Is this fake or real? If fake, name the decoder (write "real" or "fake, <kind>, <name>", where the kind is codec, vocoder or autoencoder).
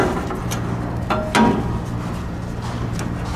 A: real